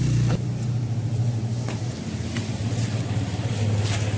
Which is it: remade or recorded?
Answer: recorded